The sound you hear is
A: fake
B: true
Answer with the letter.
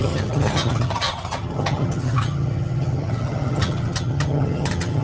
A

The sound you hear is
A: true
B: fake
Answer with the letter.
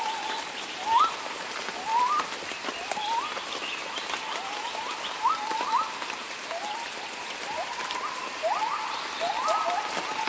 A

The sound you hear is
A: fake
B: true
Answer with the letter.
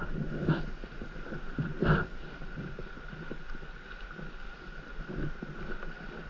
B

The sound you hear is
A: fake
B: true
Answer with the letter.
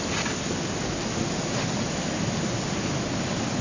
B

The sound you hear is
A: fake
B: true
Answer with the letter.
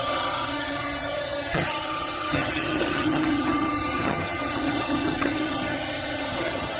A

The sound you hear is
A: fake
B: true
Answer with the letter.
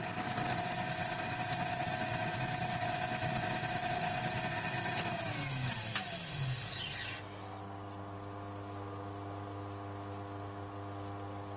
B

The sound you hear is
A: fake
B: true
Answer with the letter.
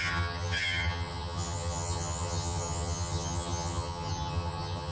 A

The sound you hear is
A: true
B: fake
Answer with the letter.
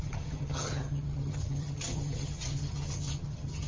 B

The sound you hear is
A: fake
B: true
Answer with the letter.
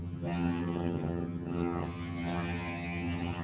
A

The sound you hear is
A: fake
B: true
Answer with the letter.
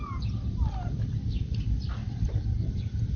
B